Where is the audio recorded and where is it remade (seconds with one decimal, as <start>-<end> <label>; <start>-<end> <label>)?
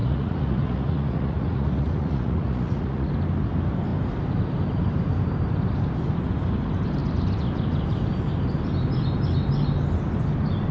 0.0-3.1 remade; 3.1-10.7 recorded